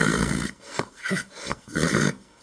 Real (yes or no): no